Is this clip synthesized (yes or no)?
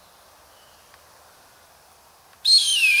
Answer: no